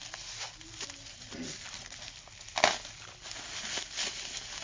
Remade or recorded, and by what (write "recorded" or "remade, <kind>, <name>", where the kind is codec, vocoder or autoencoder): recorded